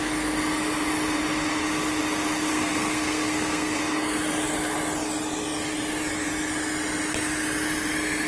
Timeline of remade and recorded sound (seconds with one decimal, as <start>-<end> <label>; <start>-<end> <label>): 0.0-2.5 recorded; 2.5-3.8 remade; 3.8-8.3 recorded